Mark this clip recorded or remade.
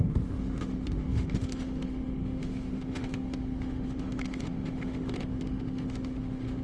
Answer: remade